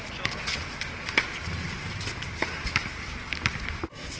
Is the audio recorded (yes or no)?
yes